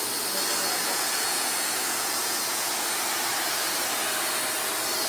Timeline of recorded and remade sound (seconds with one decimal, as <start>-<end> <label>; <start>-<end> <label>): 0.0-0.8 recorded; 0.8-2.7 remade; 2.7-5.1 recorded